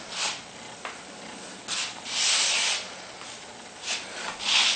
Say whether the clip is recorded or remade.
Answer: recorded